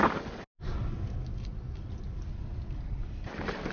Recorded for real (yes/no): yes